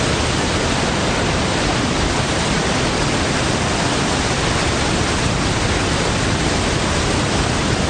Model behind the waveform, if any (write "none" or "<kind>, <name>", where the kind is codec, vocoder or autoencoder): none